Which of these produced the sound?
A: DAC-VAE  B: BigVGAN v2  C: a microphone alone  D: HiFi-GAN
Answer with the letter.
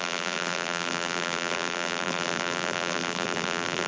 B